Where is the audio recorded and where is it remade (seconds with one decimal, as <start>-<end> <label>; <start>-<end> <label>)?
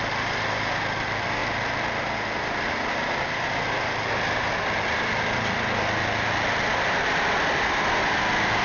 0.0-8.6 recorded